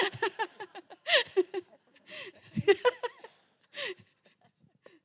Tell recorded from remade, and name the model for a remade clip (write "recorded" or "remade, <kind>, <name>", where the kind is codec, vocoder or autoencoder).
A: recorded